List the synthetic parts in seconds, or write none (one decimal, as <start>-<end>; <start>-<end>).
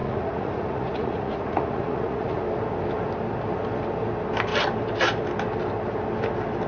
0.0-2.4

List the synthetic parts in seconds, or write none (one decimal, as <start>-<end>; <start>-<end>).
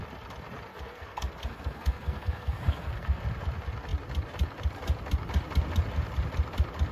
0.7-3.2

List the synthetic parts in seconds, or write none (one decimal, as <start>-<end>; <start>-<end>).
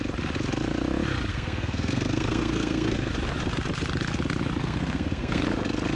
1.3-3.1; 4.6-5.4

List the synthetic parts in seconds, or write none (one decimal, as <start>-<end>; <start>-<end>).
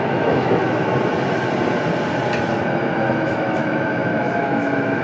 0.0-0.6; 3.1-5.0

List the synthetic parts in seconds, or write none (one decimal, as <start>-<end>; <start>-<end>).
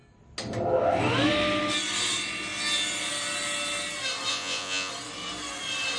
4.3-4.9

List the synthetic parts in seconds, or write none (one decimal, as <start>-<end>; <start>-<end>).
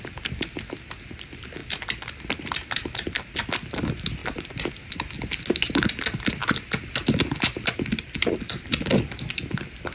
1.6-3.5; 4.2-4.7; 8.2-9.0